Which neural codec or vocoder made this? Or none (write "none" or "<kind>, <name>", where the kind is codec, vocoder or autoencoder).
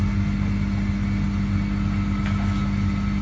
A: none